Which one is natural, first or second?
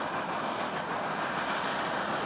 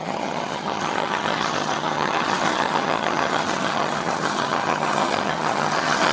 first